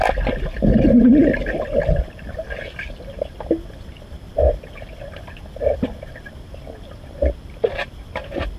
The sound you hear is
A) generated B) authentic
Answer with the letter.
B